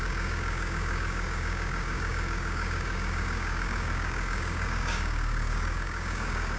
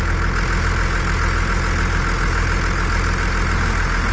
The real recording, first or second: second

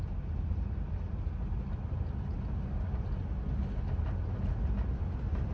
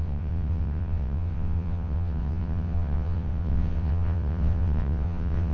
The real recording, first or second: first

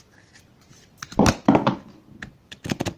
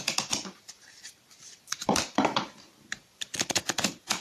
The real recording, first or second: first